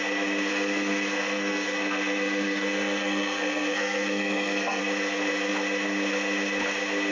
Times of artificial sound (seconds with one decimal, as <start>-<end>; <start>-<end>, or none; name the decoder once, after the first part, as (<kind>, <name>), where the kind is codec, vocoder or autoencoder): 0.5-4.8 (codec, SNAC)